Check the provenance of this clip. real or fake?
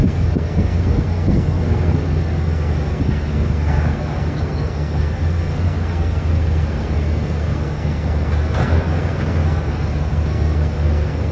fake